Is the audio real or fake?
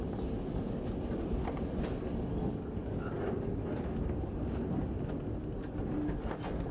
real